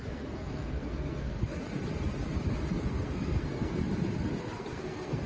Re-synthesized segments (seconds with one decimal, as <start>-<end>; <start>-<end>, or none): 0.0-1.6; 2.7-3.8; 4.5-5.3